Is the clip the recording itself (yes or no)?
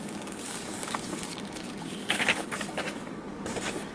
no